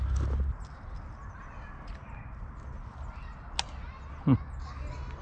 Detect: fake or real real